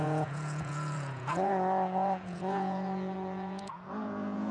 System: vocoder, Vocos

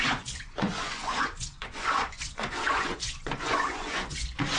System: vocoder, Vocos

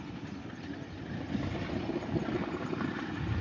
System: none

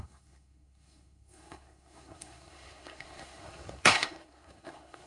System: codec, SNAC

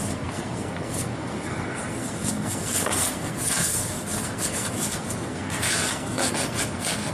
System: codec, SNAC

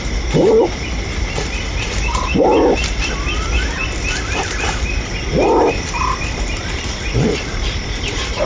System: none